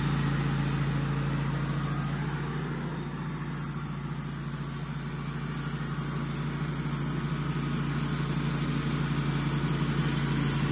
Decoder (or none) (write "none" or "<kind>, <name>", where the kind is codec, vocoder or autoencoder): none